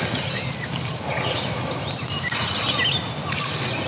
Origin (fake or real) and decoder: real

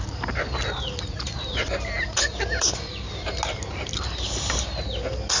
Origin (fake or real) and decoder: real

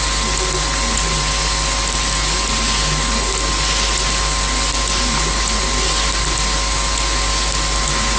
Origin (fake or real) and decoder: real